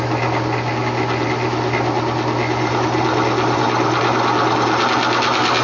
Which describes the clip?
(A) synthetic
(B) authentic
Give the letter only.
B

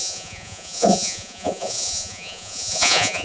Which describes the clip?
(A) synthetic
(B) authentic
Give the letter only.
A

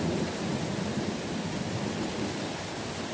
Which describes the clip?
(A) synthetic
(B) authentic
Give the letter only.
B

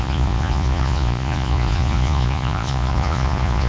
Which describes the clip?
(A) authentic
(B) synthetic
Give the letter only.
B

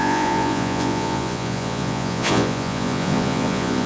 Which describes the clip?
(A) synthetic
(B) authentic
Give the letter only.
A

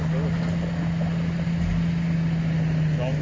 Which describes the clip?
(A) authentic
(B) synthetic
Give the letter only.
A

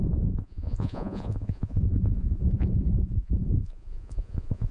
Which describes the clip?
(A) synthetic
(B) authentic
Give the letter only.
A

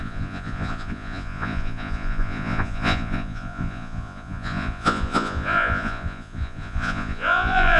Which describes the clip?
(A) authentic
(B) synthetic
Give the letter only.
B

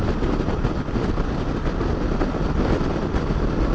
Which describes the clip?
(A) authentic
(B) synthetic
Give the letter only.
A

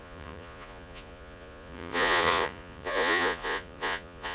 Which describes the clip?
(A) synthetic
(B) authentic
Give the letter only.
A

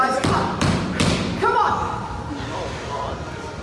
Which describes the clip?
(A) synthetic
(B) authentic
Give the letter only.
B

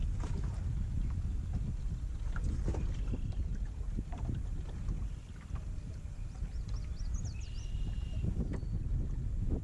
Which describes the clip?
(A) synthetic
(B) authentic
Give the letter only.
B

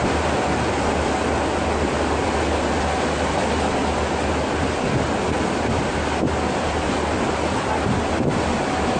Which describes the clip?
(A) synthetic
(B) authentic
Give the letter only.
B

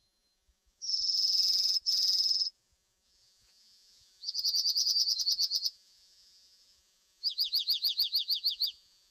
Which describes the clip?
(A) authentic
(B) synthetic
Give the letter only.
B